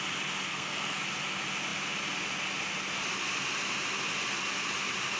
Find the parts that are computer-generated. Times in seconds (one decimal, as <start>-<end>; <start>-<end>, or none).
0.5-1.0